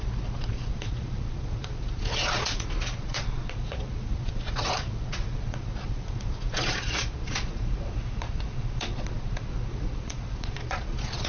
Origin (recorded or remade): remade